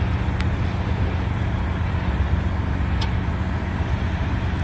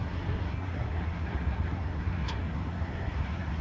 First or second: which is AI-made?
second